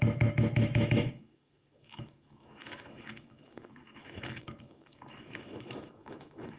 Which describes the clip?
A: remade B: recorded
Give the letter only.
A